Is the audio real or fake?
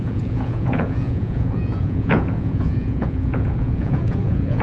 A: fake